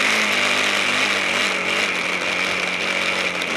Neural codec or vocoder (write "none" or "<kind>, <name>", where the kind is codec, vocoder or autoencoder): none